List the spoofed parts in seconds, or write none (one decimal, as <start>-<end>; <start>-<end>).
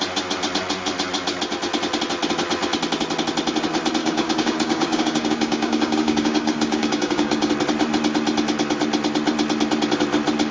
4.0-7.5